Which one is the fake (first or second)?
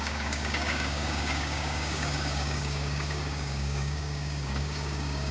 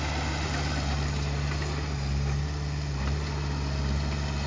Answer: first